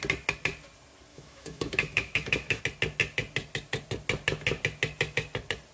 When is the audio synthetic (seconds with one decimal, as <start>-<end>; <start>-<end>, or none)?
1.1-2.6